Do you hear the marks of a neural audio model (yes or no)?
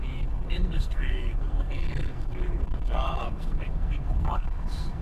yes